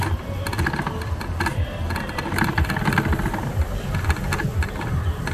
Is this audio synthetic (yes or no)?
no